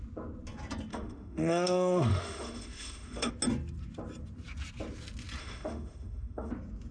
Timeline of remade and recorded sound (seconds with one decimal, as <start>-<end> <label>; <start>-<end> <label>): 0.0-0.9 recorded; 0.9-3.3 remade; 3.3-5.4 recorded; 5.4-6.5 remade; 6.5-6.9 recorded